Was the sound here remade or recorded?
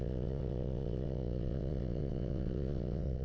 remade